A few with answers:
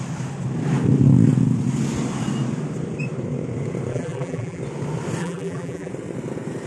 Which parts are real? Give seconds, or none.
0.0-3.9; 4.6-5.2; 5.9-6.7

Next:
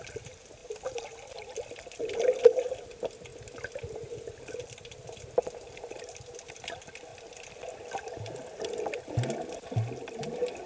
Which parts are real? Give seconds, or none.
0.0-10.7

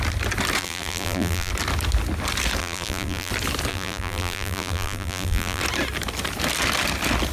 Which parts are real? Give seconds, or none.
0.0-0.6; 1.5-2.6; 3.3-3.7; 5.6-7.3

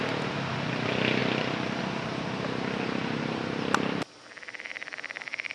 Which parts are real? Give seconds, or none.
0.0-5.5

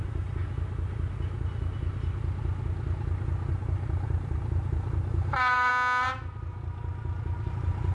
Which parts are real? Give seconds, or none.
0.4-3.5; 5.7-7.5

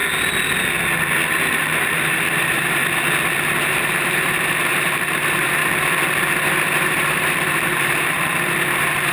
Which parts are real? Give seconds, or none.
0.0-1.5; 2.8-3.7; 5.6-6.9